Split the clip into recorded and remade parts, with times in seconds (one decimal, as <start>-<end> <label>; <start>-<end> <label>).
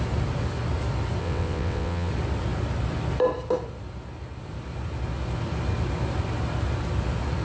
0.0-1.2 recorded; 1.2-2.1 remade; 2.1-7.4 recorded